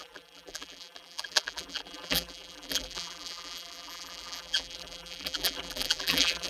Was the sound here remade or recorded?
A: remade